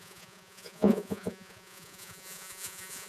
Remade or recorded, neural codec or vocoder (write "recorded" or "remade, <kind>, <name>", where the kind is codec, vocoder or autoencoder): remade, vocoder, Vocos